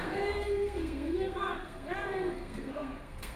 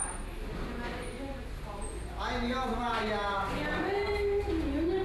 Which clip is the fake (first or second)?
first